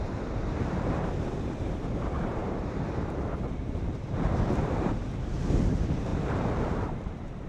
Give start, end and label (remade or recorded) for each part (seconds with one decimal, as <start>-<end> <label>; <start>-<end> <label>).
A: 0.0-7.5 remade